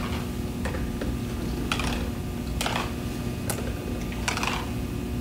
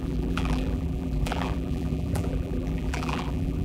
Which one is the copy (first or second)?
second